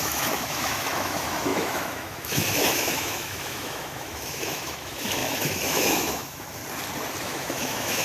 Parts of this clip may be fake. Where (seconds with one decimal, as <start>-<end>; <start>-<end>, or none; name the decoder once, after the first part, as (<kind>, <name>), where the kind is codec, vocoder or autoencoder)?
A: 0.0-6.6 (autoencoder, DAC-VAE); 7.2-8.0